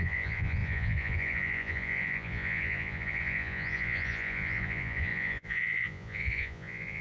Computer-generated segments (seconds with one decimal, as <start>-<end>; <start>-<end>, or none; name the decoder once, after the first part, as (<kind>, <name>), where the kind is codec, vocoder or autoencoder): 0.0-7.0 (vocoder, Vocos)